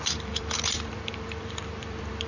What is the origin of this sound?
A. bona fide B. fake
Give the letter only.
B